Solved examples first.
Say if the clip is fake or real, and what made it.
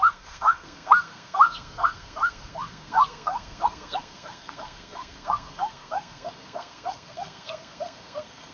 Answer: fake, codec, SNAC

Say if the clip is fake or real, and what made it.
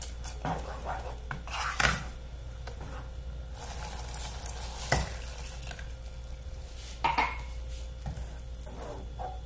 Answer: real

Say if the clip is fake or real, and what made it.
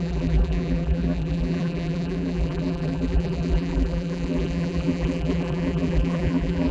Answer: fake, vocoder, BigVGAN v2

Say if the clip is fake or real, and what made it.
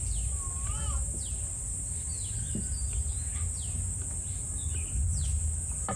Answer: real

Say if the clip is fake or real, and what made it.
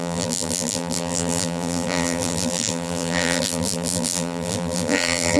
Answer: fake, vocoder, BigVGAN v2